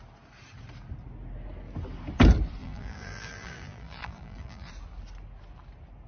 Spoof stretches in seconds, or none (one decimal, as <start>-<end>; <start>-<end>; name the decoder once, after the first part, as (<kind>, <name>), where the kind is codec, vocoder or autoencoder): 2.6-4.7 (vocoder, BigVGAN v2)